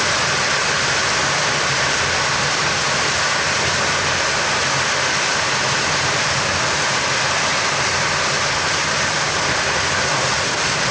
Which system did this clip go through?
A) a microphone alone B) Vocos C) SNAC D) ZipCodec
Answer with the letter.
A